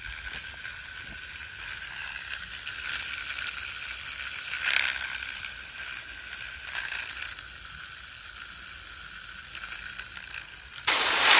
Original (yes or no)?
yes